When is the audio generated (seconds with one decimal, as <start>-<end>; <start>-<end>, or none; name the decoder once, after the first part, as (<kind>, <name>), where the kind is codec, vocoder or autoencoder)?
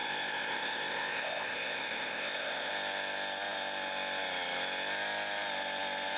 0.0-2.7 (codec, ZipCodec)